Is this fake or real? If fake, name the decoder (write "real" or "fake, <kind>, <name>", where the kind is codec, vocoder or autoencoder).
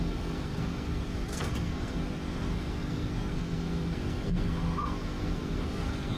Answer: fake, codec, SNAC